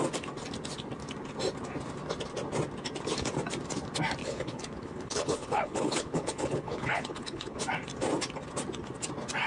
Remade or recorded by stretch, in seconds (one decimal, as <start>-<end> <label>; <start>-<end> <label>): 0.0-4.2 recorded; 4.2-7.6 remade; 7.6-9.5 recorded